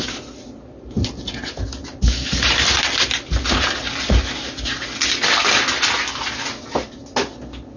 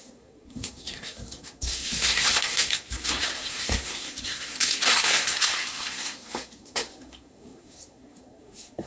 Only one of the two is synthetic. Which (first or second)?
second